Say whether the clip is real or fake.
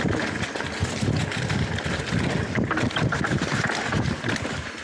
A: real